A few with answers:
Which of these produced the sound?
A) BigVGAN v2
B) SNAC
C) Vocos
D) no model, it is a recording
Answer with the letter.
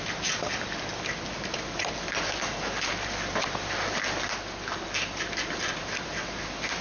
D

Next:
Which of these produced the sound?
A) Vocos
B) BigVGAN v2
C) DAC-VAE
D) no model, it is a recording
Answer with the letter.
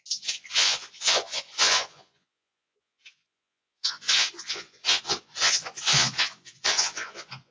A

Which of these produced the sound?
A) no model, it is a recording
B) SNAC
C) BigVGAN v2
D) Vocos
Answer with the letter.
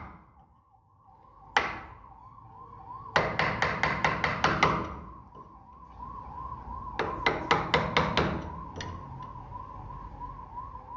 A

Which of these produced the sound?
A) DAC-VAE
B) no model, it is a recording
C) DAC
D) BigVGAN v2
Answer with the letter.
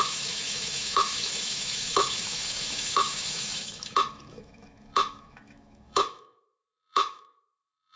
A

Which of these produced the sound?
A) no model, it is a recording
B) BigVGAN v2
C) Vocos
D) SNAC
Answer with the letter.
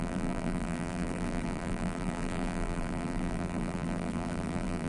B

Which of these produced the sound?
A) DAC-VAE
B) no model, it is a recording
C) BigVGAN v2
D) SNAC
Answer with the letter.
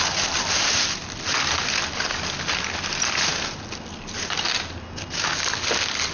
B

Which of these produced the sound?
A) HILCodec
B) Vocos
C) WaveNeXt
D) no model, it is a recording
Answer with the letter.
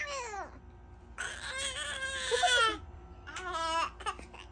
D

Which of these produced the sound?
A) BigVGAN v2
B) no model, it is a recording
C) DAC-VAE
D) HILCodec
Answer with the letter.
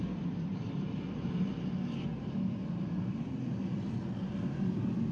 A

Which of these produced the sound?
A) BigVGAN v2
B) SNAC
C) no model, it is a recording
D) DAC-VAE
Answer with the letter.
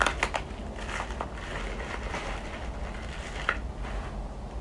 C